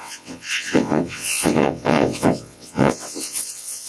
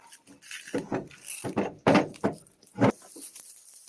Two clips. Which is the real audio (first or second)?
second